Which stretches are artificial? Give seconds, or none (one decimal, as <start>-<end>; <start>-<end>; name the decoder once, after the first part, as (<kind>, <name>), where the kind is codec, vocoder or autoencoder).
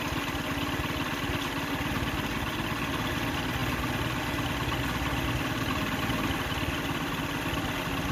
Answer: none